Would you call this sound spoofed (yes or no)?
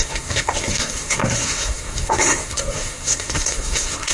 yes